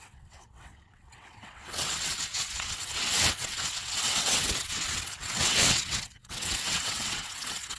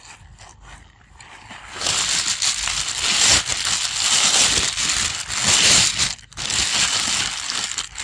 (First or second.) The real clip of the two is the second